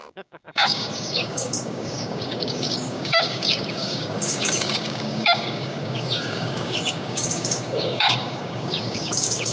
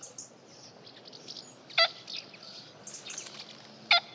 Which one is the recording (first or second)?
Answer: second